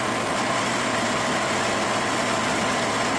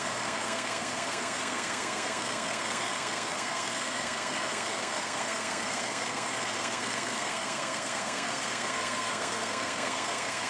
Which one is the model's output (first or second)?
second